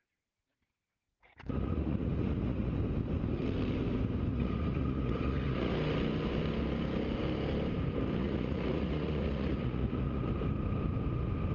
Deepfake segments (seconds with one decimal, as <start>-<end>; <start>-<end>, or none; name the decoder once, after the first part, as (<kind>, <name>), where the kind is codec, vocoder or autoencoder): 1.1-2.7 (vocoder, Vocos); 4.3-5.7; 8.2-10.3